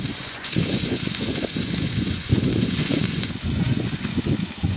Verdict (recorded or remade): remade